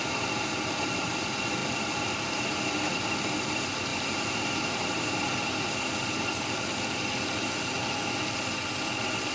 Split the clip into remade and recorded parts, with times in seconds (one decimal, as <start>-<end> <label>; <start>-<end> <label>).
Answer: 0.0-3.9 recorded; 3.9-5.1 remade; 5.1-9.3 recorded